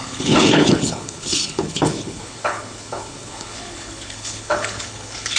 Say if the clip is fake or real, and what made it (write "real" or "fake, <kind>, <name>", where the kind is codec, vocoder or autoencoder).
fake, codec, HILCodec